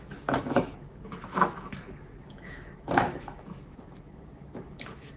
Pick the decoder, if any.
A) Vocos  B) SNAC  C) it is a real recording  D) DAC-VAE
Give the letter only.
D